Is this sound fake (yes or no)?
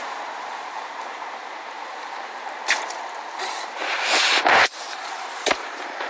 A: yes